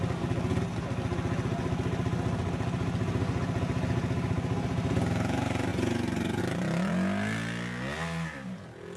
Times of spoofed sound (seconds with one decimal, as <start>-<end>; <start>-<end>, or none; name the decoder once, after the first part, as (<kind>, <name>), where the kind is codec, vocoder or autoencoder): 5.7-6.4 (vocoder, Vocos)